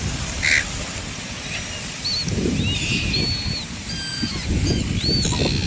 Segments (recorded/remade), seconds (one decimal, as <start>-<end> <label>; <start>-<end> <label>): 0.0-4.1 recorded; 4.1-4.8 remade; 4.8-5.7 recorded